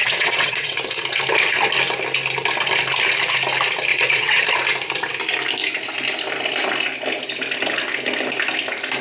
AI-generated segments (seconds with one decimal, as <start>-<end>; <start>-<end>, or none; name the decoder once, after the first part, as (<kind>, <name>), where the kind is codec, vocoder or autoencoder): 0.0-0.8 (vocoder, WaveNeXt); 3.9-4.4